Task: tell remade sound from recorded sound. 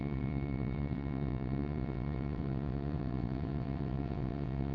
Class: remade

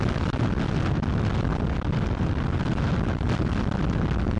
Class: recorded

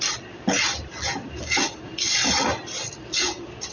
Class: recorded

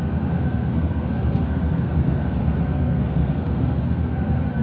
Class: remade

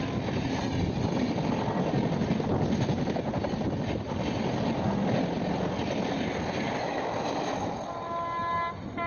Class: recorded